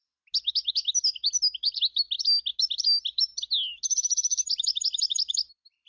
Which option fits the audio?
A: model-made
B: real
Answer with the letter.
B